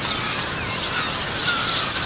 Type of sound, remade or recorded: recorded